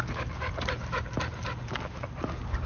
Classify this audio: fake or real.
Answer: real